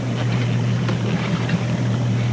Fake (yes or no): no